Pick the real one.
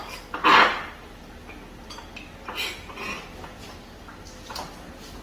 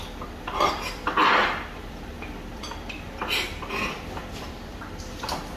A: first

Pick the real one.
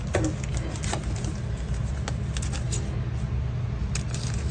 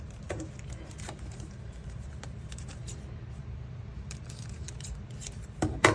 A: first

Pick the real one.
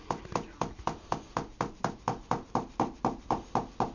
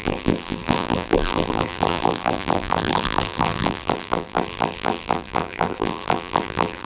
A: first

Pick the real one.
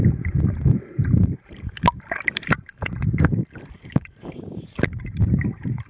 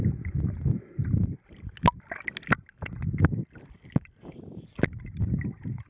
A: second